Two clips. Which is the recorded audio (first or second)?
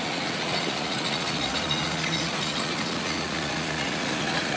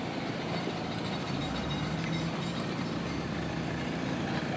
second